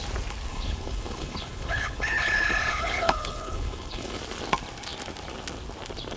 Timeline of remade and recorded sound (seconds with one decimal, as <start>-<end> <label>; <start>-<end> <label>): 0.0-0.5 recorded; 0.5-4.2 remade; 4.2-6.2 recorded